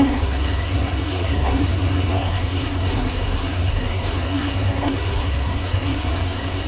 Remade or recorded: remade